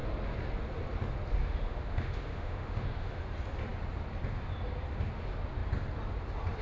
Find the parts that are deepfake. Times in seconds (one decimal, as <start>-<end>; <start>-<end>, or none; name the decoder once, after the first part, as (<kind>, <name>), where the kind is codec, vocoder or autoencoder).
1.4-3.2 (autoencoder, DAC-VAE)